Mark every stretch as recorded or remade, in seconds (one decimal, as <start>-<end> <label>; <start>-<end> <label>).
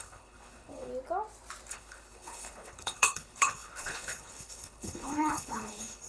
0.0-0.9 remade; 0.9-1.7 recorded; 1.7-6.1 remade